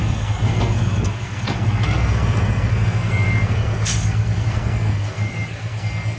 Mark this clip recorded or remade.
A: remade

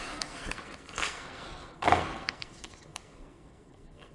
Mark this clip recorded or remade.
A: remade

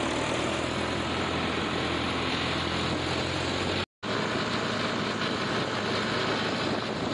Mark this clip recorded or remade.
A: recorded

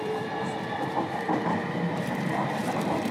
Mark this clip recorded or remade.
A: remade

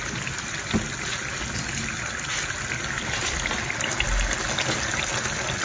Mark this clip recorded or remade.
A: recorded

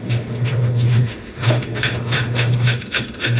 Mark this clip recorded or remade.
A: remade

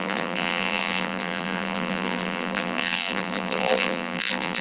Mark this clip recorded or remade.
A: remade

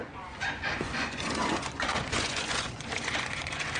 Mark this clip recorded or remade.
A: remade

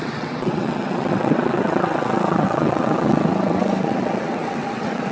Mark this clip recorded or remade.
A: remade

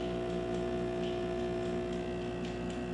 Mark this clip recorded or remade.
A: recorded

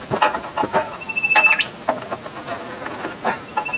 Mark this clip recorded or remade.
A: recorded